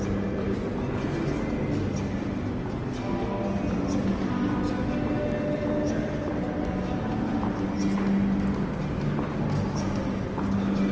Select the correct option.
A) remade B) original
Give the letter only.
B